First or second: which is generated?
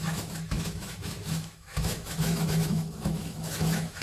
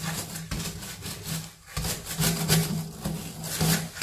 first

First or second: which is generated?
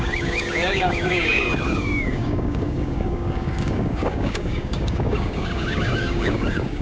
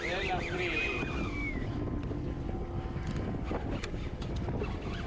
first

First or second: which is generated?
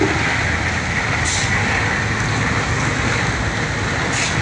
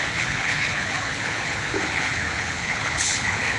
second